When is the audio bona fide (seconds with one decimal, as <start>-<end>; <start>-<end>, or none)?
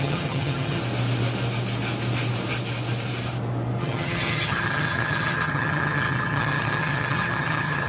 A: 0.8-3.8